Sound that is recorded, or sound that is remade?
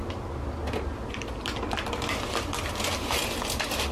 recorded